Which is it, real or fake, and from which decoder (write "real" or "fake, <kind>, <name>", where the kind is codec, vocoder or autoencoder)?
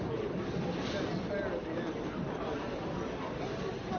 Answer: real